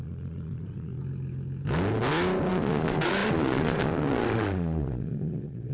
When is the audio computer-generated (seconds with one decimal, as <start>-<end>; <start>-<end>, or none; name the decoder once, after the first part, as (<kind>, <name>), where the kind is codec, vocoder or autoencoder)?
0.0-1.0 (vocoder, Vocos); 2.5-5.7